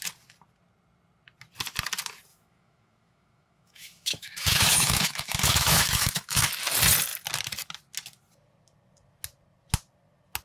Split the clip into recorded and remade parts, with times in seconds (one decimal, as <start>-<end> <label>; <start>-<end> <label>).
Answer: 0.0-2.3 recorded; 2.3-6.5 remade; 6.5-10.4 recorded